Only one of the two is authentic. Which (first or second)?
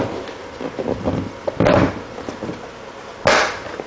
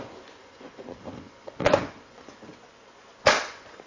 first